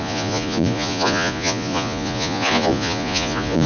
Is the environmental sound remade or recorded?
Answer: remade